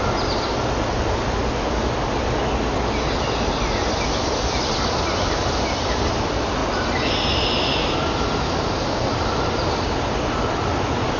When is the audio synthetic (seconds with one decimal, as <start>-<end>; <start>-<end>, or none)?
none